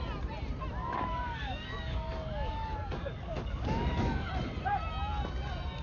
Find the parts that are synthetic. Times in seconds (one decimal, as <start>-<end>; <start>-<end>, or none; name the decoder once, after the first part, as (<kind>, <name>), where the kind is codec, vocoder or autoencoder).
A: 0.8-4.3 (codec, DAC)